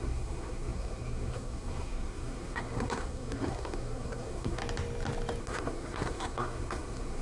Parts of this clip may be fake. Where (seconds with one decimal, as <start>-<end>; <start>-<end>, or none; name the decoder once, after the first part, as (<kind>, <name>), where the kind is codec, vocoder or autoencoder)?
0.0-4.6 (codec, SNAC); 5.4-7.2